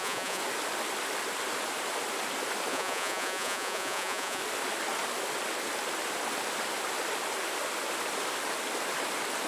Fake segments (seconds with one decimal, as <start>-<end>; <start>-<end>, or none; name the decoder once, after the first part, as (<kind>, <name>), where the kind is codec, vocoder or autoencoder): 0.0-0.4 (vocoder, Vocos); 2.7-4.4